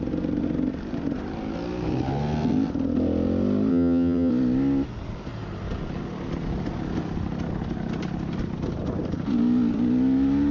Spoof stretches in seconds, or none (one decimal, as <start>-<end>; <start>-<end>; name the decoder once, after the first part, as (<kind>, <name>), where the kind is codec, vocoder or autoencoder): 3.7-4.3 (vocoder, HiFi-GAN)